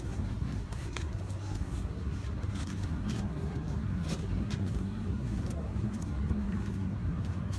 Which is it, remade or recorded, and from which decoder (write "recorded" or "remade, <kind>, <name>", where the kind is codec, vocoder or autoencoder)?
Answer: remade, codec, SNAC